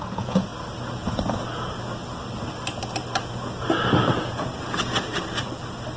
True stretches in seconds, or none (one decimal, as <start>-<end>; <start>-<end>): 0.5-4.1; 5.1-6.0